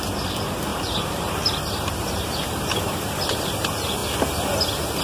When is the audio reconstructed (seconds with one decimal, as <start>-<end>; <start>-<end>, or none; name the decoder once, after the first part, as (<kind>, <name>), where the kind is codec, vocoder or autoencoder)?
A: 0.0-4.0 (vocoder, BigVGAN v2)